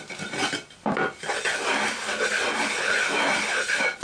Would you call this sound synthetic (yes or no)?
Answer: no